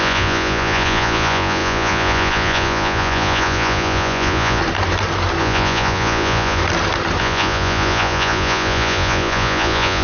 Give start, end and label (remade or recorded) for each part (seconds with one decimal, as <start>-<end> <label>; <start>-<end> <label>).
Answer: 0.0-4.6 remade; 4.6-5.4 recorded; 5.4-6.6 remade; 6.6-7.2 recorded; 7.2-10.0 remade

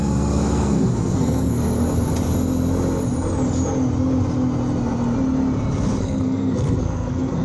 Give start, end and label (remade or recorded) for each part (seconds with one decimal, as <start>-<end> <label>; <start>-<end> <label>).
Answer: 0.0-1.6 remade; 1.6-6.0 recorded; 6.0-7.4 remade

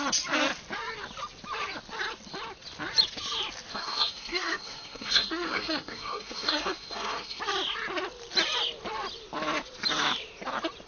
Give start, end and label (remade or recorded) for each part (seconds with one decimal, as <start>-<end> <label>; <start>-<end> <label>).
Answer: 0.0-3.7 recorded; 3.7-7.4 remade; 7.4-10.9 recorded

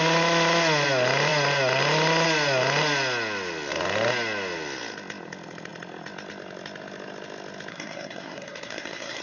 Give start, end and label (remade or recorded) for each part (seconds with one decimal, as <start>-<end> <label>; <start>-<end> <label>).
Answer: 0.0-7.7 recorded; 7.7-9.2 remade

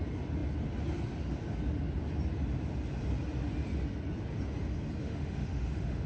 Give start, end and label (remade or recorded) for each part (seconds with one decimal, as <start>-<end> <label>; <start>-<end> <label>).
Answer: 0.0-5.0 recorded; 5.0-6.1 remade

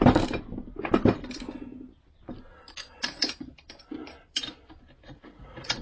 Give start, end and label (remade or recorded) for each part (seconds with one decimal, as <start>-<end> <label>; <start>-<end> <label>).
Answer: 0.0-5.0 recorded; 5.0-5.8 remade

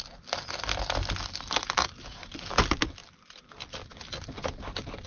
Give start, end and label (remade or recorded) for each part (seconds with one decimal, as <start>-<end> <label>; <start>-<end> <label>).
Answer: 0.0-5.1 recorded